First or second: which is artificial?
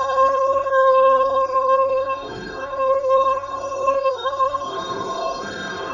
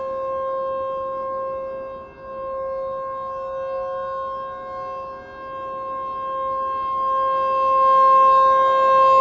first